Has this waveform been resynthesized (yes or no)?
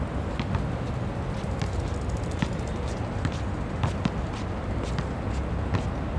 no